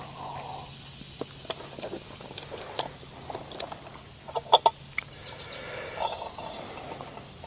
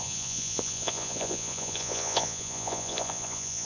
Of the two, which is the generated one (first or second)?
second